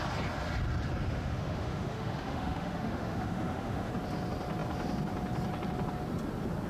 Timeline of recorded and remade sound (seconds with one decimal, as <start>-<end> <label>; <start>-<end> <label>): 0.0-1.1 recorded; 1.1-3.9 remade; 3.9-6.7 recorded